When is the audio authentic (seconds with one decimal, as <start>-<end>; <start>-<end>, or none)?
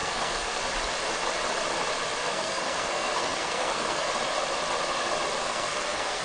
0.6-2.2; 4.1-5.4